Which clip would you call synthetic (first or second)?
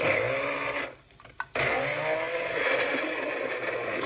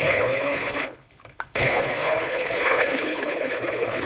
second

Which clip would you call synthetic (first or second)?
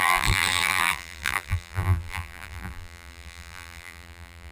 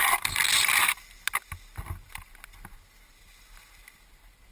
first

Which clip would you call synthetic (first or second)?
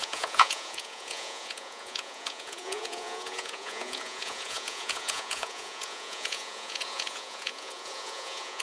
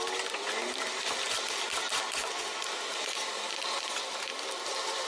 first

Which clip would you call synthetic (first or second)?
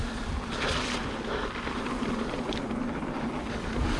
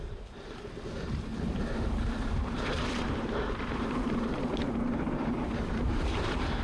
second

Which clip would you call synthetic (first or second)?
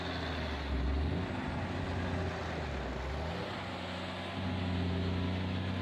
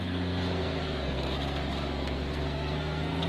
second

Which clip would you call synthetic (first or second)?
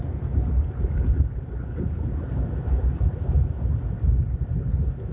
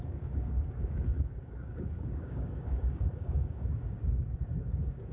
second